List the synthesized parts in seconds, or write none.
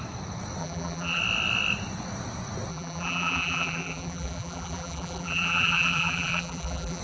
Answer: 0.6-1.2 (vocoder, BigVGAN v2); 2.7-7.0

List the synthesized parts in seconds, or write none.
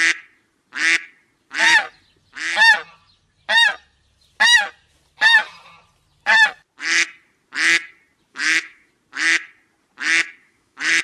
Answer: 8.3-8.9 (autoencoder, DAC-VAE); 10.4-11.0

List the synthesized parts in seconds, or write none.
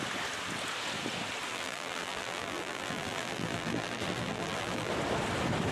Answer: 1.5-4.9 (vocoder, BigVGAN v2)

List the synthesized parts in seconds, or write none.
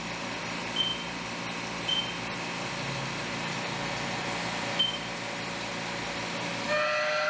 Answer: none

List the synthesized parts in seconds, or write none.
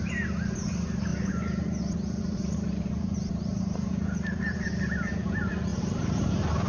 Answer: 1.1-5.1 (vocoder, BigVGAN v2); 5.7-6.7